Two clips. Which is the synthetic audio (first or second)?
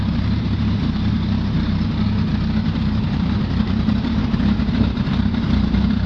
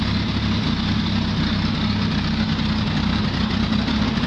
first